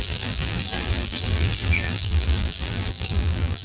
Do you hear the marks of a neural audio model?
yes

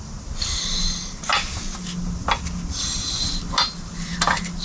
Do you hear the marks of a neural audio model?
no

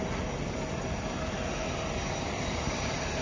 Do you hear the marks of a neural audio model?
no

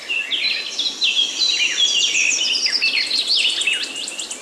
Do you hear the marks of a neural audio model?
no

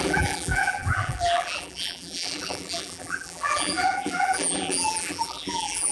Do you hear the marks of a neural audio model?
yes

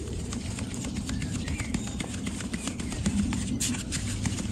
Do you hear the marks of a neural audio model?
yes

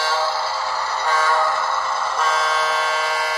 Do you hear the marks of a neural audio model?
no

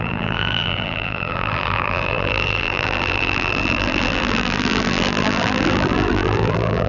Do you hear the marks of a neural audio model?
yes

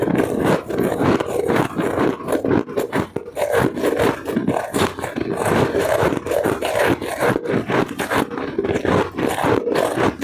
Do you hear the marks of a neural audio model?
no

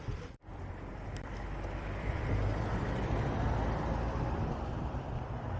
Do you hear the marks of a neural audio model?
yes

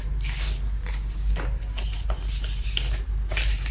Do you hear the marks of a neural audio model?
no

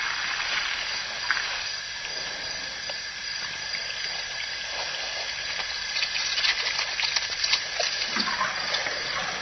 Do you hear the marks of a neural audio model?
no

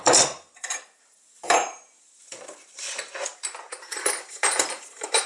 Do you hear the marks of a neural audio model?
yes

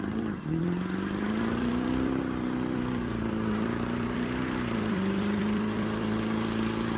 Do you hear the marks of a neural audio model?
yes